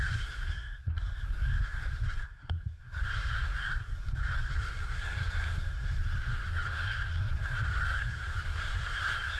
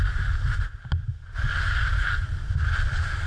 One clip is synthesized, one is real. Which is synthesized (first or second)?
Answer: first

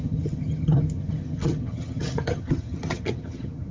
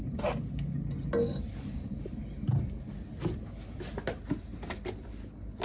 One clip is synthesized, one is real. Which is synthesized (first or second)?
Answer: first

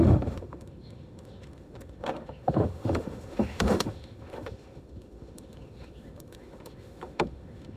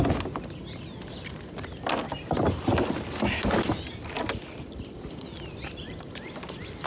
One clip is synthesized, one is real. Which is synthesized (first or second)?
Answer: first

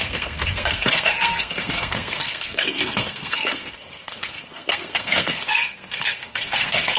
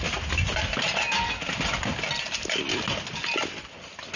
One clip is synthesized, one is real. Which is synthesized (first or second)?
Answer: first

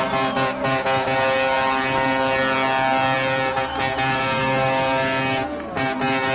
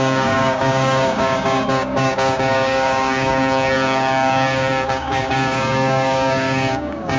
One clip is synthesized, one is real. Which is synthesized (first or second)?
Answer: second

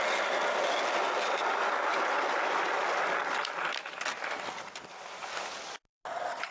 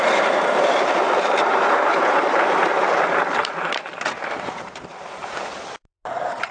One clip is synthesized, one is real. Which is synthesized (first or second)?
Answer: second